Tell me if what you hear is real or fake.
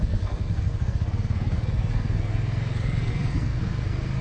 fake